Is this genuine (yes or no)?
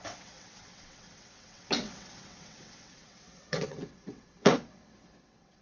no